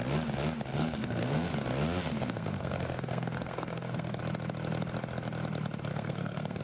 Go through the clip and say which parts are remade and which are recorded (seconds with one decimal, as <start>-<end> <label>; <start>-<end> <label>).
0.0-0.7 recorded; 0.7-1.5 remade; 1.5-2.1 recorded; 2.1-4.2 remade; 4.2-5.9 recorded; 5.9-6.6 remade